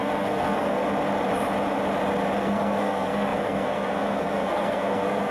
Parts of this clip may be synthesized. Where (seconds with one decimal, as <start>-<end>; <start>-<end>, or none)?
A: 0.0-0.8; 2.4-5.3